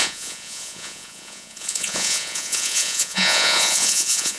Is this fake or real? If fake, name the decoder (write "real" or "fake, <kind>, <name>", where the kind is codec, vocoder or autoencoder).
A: fake, vocoder, Vocos